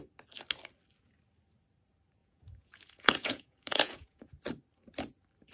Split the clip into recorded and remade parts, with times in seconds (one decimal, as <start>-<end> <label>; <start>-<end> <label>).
0.0-2.2 recorded; 2.2-4.3 remade; 4.3-5.5 recorded

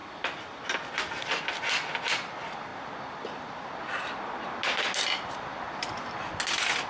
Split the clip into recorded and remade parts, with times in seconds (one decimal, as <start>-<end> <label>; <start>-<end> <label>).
0.0-6.9 recorded

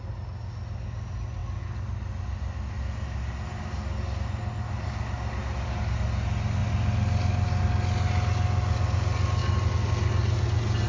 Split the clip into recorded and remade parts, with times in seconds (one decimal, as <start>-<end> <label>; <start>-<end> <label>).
0.0-10.9 recorded

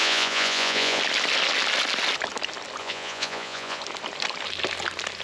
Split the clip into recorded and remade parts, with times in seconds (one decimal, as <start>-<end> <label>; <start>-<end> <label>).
0.0-1.0 remade; 1.0-2.8 recorded; 2.8-3.8 remade; 3.8-5.2 recorded

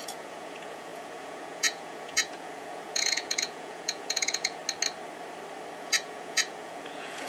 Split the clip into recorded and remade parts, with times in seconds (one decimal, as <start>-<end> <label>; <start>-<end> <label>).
0.0-4.6 remade; 4.6-5.8 recorded; 5.8-7.3 remade

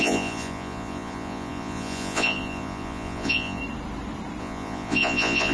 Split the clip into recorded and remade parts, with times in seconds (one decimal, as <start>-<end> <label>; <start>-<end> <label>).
0.0-3.6 remade; 3.6-4.4 recorded; 4.4-5.5 remade

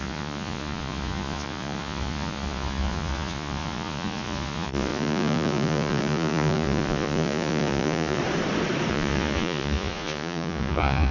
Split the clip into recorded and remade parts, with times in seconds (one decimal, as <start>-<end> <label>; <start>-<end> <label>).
0.0-8.2 remade; 8.2-8.9 recorded; 8.9-11.1 remade

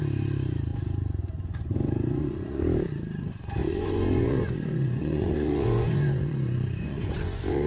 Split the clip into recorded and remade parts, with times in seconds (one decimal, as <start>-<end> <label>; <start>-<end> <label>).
0.0-0.7 recorded; 0.7-2.6 remade; 2.6-3.6 recorded; 3.6-7.7 remade